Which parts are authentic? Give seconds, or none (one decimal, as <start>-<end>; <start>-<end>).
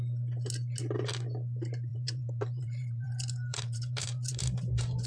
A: 0.0-1.9